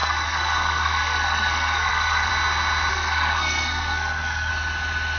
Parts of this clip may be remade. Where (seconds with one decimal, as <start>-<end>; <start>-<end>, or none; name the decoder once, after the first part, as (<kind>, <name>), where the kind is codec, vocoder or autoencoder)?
0.0-2.3 (codec, SNAC); 2.9-4.5